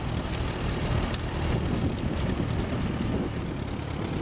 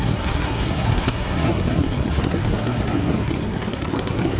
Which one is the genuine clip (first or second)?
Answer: first